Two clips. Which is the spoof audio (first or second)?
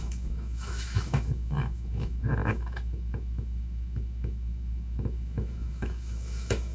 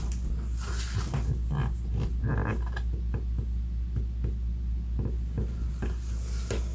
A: first